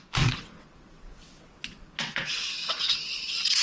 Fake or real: fake